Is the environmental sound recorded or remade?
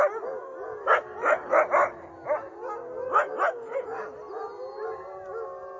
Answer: recorded